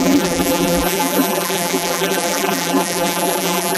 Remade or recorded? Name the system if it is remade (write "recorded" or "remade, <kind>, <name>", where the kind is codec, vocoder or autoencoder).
remade, vocoder, BigVGAN v2